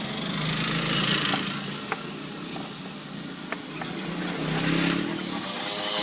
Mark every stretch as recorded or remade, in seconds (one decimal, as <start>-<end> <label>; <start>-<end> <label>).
0.0-6.0 recorded